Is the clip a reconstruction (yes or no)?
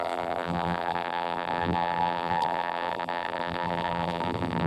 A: yes